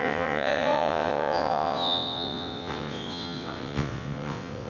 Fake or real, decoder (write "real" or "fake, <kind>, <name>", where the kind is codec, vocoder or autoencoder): fake, vocoder, WaveNeXt